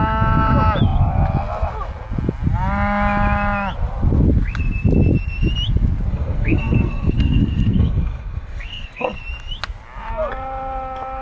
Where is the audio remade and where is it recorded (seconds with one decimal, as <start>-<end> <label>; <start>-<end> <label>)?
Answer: 0.0-6.1 recorded; 6.1-9.2 remade; 9.2-11.2 recorded